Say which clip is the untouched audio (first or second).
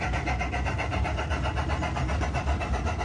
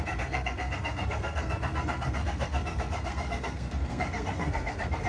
first